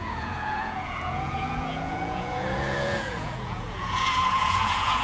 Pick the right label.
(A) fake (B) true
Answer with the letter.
A